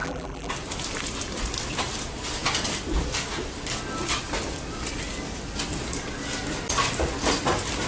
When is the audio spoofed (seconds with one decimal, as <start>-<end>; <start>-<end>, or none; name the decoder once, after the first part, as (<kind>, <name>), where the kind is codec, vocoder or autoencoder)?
0.0-0.5 (vocoder, BigVGAN v2)